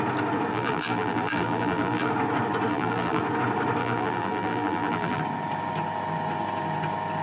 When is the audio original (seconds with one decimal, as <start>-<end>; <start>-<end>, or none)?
0.0-0.5; 2.1-2.7; 3.2-3.8; 5.2-7.2